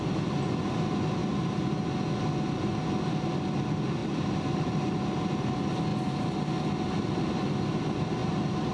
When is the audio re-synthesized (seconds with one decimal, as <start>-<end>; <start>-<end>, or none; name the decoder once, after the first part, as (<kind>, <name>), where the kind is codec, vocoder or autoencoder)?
4.0-4.8 (vocoder, BigVGAN v2); 8.2-8.7